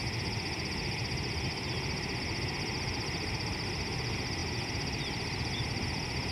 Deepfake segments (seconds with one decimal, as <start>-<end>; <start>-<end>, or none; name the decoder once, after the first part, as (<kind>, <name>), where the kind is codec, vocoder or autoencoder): 0.0-6.3 (vocoder, BigVGAN v2)